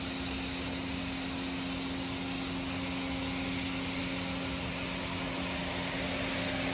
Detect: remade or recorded recorded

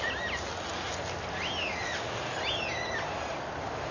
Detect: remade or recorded recorded